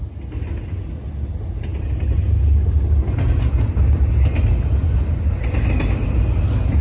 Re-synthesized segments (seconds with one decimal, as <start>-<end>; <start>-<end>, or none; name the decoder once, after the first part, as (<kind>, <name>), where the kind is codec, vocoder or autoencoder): none